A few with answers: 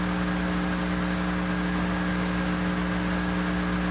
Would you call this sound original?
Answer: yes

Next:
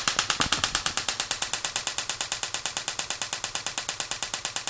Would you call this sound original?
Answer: yes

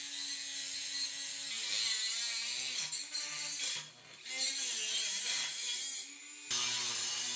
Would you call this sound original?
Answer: yes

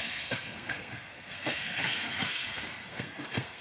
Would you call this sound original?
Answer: no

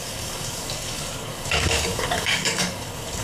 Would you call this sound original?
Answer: no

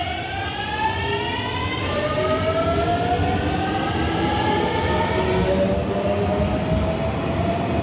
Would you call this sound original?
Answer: yes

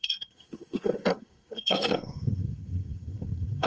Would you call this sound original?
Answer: no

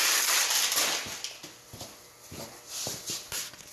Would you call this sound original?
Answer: yes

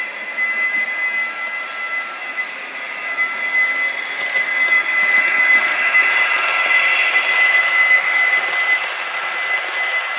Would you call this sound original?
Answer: yes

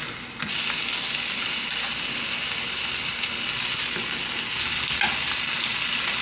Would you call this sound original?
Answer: yes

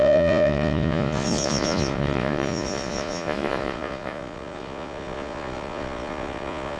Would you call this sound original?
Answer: no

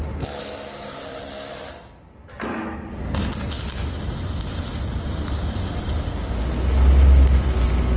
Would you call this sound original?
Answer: yes